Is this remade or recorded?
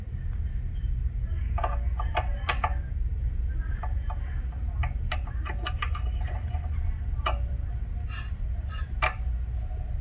recorded